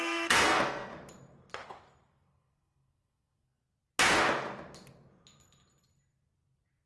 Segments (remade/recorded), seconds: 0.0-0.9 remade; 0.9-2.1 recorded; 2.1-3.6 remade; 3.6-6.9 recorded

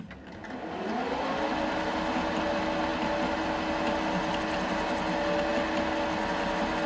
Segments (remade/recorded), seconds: 0.0-6.9 recorded

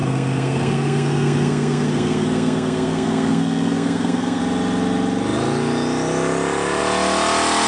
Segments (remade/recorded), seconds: 0.0-4.4 remade; 4.4-7.7 recorded